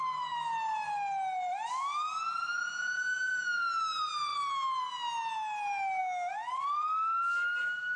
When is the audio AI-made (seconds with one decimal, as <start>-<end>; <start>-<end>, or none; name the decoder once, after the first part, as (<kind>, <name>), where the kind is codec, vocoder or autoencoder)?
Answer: none